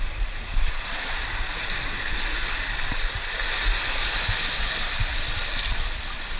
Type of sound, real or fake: real